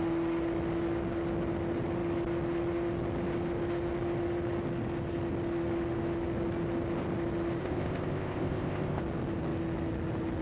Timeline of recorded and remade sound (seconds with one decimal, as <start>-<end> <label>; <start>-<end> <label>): 0.0-7.6 recorded; 7.6-9.0 remade; 9.0-10.4 recorded